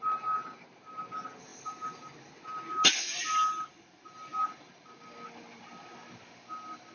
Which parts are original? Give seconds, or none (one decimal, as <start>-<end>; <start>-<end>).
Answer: 0.0-6.9